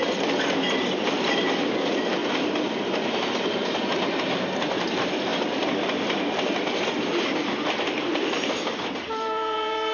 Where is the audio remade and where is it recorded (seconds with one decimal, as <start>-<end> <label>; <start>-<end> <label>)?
0.0-2.2 remade; 2.2-4.8 recorded; 4.8-5.3 remade; 5.3-6.2 recorded; 6.2-9.9 remade